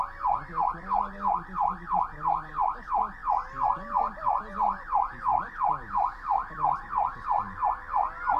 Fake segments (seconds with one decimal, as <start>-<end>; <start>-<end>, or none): 5.3-7.7

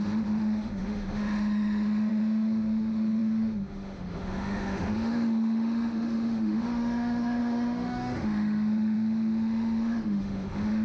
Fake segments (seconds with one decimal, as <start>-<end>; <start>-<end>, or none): 0.0-10.8

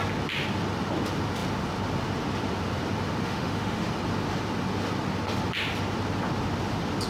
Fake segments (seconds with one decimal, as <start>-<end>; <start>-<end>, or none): 3.2-3.9